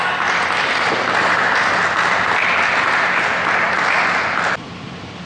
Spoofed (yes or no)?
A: no